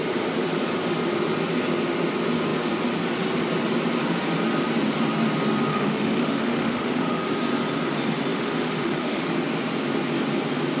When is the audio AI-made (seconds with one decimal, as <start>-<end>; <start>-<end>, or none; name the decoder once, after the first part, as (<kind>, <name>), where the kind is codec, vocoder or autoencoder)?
5.7-7.2 (autoencoder, DAC-VAE); 8.3-9.3